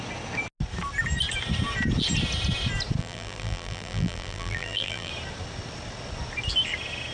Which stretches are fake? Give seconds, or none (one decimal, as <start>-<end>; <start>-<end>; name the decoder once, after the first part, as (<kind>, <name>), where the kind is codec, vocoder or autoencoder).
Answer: 3.0-5.1 (vocoder, BigVGAN v2)